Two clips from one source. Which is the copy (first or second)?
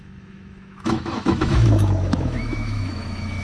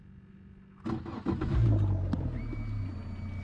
first